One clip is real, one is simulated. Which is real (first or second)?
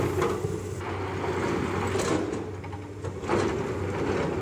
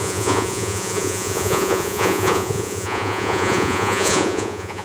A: first